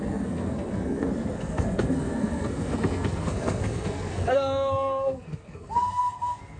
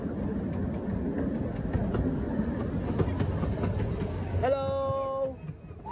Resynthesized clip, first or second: first